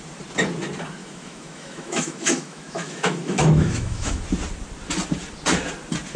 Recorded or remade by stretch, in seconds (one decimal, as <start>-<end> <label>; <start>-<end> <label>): 0.0-1.0 recorded; 1.0-4.2 remade; 4.2-6.2 recorded